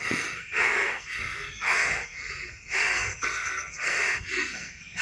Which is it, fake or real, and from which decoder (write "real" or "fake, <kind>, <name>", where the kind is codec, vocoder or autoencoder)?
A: fake, codec, SNAC